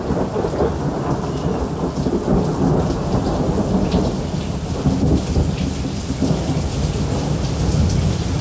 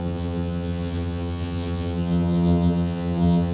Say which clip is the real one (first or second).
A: first